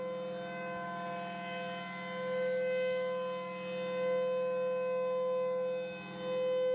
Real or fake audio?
real